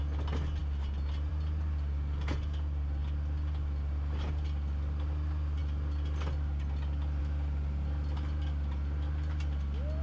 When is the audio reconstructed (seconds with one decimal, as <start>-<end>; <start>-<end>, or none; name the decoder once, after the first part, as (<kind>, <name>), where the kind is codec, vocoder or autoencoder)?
none